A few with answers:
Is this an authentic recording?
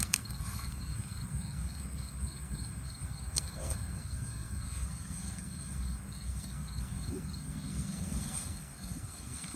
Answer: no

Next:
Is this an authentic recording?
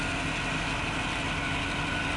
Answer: yes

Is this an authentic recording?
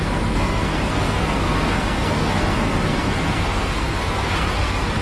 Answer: no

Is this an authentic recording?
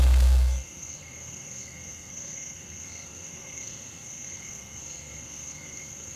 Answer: no